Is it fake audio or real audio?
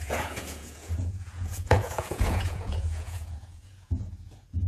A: fake